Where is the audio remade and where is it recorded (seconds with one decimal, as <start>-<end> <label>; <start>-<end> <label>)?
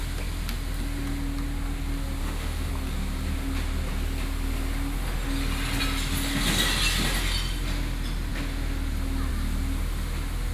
0.0-2.2 recorded; 2.2-2.7 remade; 2.7-10.5 recorded